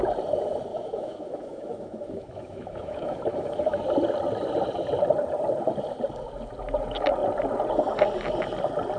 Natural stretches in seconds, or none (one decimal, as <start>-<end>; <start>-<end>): 0.0-0.7; 3.8-9.0